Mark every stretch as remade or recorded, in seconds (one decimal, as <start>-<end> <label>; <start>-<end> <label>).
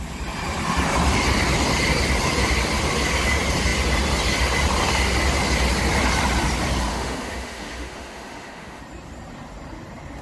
0.0-6.9 recorded; 6.9-8.8 remade; 8.8-10.2 recorded